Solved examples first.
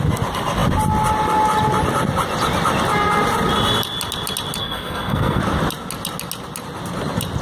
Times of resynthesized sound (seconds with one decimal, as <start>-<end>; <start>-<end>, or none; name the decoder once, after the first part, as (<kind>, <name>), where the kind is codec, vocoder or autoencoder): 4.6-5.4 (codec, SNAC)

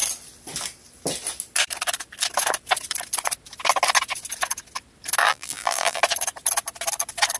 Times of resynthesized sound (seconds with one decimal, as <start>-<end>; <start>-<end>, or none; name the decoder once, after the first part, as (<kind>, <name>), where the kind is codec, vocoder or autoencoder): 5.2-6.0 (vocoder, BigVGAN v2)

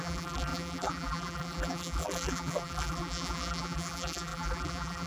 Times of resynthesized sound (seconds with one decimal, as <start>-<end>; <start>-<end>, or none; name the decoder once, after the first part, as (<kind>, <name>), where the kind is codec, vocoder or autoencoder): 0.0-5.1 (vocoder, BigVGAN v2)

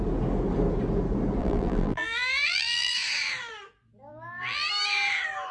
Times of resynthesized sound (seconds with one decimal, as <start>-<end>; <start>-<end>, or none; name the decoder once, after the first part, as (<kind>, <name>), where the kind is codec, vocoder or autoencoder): 1.4-2.9 (vocoder, BigVGAN v2); 4.1-4.7

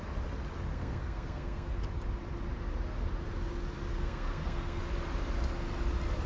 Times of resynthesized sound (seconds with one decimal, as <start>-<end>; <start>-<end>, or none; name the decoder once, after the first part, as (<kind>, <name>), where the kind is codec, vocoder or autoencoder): 0.7-1.7 (codec, SNAC); 3.9-4.8

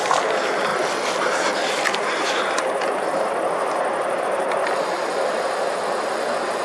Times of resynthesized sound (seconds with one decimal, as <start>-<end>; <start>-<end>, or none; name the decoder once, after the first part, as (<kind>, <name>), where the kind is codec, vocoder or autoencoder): none

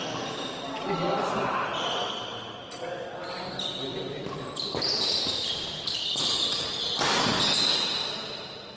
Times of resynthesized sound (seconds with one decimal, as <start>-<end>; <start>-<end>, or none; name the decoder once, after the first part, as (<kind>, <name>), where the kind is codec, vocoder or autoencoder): 0.0-2.3 (vocoder, BigVGAN v2); 3.5-8.8

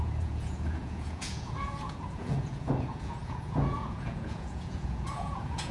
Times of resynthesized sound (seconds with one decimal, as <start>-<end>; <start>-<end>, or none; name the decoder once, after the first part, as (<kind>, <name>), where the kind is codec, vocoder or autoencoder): 0.0-5.7 (vocoder, Vocos)